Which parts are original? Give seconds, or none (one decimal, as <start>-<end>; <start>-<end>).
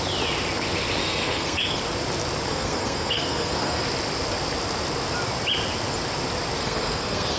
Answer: 0.0-1.0; 1.8-2.5; 3.8-6.6